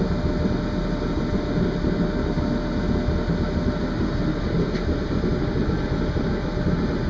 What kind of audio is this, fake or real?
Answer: real